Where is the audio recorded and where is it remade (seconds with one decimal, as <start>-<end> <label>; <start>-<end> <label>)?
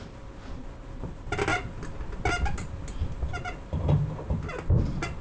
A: 0.0-5.2 recorded